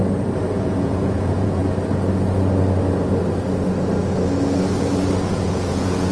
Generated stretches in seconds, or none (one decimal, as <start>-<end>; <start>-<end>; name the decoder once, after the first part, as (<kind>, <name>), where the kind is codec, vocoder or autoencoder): 0.6-1.6 (vocoder, Vocos); 5.3-6.1